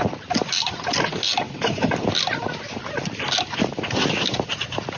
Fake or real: real